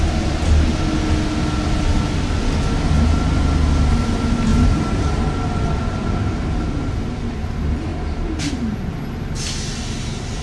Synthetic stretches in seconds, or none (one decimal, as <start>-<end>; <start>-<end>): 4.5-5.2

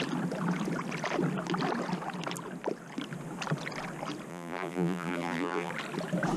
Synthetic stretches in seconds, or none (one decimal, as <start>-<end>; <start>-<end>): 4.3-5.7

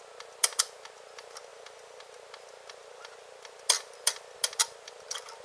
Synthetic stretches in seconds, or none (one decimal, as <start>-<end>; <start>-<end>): none

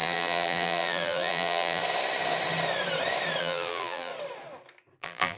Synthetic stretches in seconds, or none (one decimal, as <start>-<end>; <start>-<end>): 0.0-1.8; 3.4-4.1; 5.0-5.4

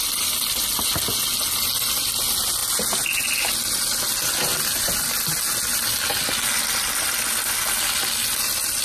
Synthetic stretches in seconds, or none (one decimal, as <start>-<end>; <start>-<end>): none